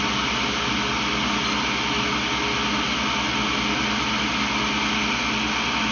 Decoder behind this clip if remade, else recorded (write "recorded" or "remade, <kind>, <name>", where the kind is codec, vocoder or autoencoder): recorded